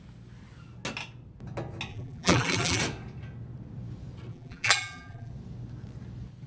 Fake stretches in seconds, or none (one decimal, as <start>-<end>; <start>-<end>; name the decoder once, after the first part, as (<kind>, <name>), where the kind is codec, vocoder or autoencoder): 1.9-2.8 (vocoder, BigVGAN v2); 4.3-5.3